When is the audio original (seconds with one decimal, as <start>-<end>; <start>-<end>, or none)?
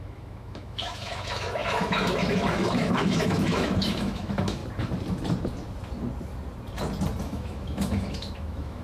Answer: 4.6-7.2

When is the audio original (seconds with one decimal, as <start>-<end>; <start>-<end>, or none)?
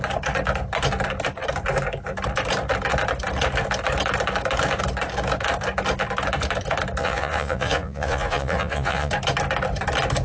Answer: 0.0-7.0; 9.1-10.2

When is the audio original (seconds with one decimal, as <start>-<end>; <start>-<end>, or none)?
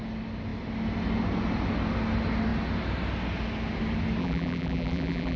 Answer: 0.0-4.2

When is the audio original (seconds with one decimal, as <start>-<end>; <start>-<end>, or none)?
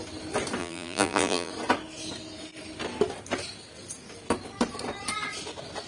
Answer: 0.0-0.6; 1.5-5.9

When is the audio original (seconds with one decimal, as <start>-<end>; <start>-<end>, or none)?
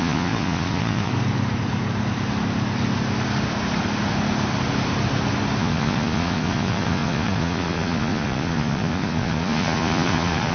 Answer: 1.1-5.6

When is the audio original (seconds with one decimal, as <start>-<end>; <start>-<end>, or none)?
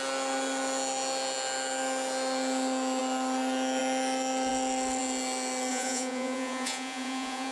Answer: 0.0-5.7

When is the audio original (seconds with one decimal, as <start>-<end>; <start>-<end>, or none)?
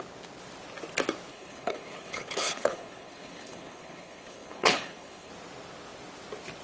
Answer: 0.0-1.3; 5.3-6.6